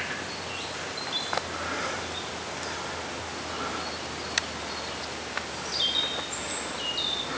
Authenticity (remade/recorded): recorded